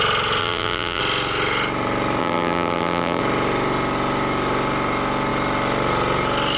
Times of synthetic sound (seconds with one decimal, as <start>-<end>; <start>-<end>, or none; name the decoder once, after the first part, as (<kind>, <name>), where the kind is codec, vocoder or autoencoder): 0.4-1.0 (vocoder, BigVGAN v2); 2.2-3.2